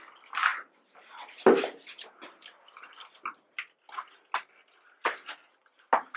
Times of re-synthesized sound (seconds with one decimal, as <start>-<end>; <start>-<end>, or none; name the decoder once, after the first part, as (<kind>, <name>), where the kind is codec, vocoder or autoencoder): 0.5-1.2 (vocoder, BigVGAN v2)